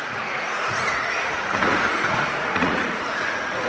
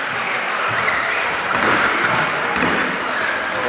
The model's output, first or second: first